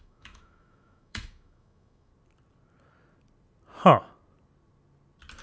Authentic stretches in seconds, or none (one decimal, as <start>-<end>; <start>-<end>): 2.1-5.4